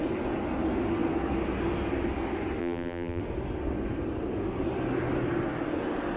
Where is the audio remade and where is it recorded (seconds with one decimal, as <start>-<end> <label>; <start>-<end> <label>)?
0.0-2.6 recorded; 2.6-3.2 remade; 3.2-6.2 recorded